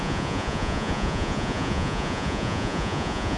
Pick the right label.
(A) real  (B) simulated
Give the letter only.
B